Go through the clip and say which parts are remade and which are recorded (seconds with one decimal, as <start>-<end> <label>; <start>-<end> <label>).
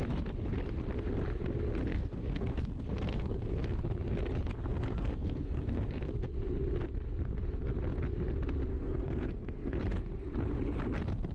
0.0-1.9 recorded; 1.9-3.8 remade; 3.8-4.7 recorded; 4.7-6.1 remade; 6.1-8.7 recorded; 8.7-9.8 remade; 9.8-11.3 recorded